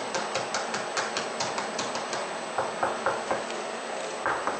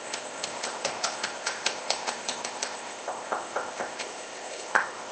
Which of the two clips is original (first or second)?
first